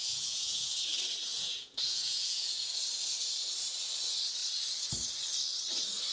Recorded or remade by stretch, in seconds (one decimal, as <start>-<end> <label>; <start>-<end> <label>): 0.0-0.9 remade; 0.9-1.3 recorded; 1.3-2.7 remade; 2.7-6.1 recorded

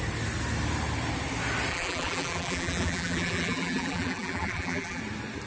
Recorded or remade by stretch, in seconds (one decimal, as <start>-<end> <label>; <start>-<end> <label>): 0.0-1.7 recorded; 1.7-5.0 remade; 5.0-5.5 recorded

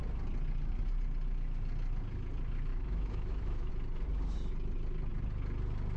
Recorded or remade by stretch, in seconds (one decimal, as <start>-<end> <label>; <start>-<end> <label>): 0.0-2.7 recorded; 2.7-3.7 remade; 3.7-6.0 recorded

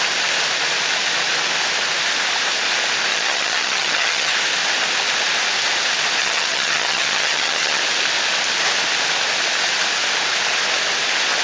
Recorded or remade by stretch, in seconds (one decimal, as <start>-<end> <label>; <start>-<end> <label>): 0.0-3.1 recorded; 3.1-4.3 remade; 4.3-6.2 recorded; 6.2-7.8 remade; 7.8-11.4 recorded

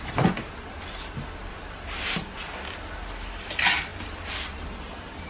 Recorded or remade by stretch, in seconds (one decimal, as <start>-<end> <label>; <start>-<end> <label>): 0.0-5.3 recorded

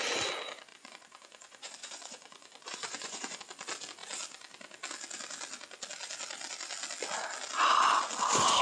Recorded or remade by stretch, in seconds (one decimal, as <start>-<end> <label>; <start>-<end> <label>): 0.0-0.7 recorded; 0.7-3.4 remade; 3.4-8.6 recorded